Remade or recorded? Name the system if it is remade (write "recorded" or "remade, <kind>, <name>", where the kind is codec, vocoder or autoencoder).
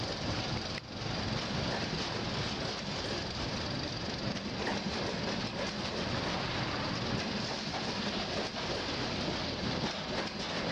recorded